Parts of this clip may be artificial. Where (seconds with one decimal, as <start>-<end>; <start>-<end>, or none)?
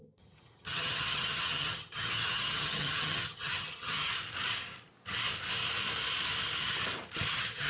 0.0-4.1; 7.3-7.7